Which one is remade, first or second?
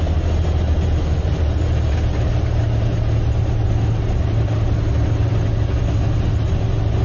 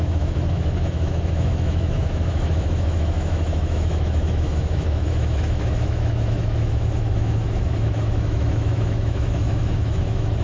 second